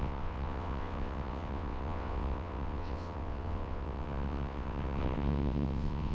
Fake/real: fake